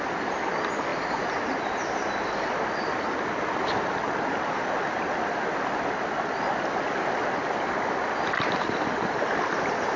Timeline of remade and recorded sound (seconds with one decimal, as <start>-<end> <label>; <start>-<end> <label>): 0.0-10.0 recorded